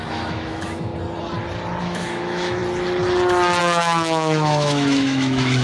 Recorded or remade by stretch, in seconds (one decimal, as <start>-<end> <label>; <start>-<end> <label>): 0.0-0.9 remade; 0.9-1.8 recorded; 1.8-2.6 remade; 2.6-3.6 recorded; 3.6-5.6 remade